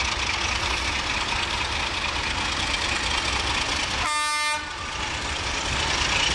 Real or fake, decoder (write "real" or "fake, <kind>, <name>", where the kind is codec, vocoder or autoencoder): real